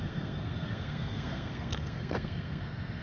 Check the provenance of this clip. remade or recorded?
remade